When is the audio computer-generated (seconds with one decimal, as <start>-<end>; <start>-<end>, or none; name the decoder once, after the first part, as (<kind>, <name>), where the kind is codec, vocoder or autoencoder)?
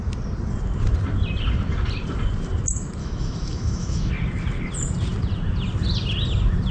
3.0-4.1 (autoencoder, DAC-VAE)